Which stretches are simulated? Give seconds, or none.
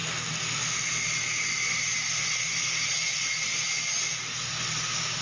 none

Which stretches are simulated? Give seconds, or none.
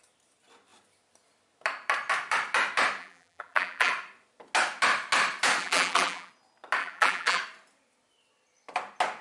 3.0-3.9; 5.6-6.3; 6.8-7.4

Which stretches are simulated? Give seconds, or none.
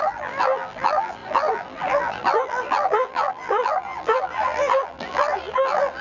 0.0-6.0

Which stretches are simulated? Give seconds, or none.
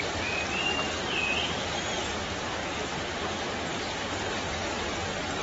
none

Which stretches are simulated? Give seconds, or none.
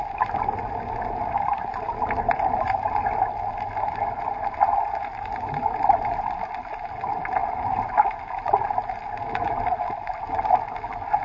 none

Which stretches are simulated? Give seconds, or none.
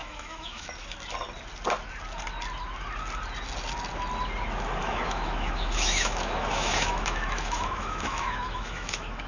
0.0-0.7; 4.8-9.3